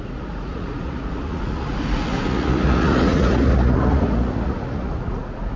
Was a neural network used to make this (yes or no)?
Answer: yes